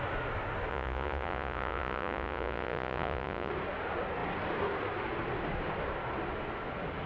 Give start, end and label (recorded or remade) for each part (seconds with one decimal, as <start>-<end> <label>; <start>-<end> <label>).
0.0-0.7 recorded; 0.7-3.5 remade; 3.5-7.1 recorded